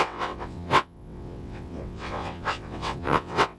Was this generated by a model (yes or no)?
yes